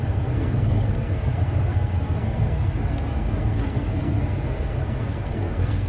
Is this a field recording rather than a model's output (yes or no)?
no